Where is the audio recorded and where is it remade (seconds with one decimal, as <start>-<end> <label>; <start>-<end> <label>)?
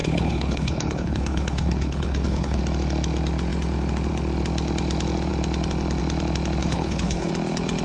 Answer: 0.0-2.6 remade; 2.6-6.6 recorded; 6.6-7.3 remade; 7.3-7.8 recorded